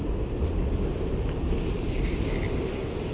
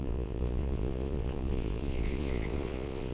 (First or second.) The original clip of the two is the first